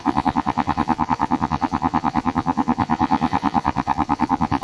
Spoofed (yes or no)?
yes